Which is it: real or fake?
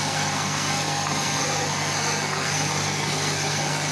fake